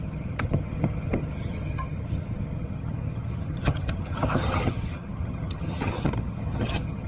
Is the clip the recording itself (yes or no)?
no